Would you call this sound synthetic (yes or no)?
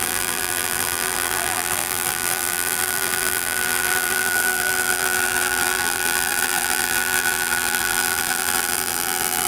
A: yes